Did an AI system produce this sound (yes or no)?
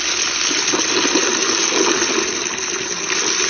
no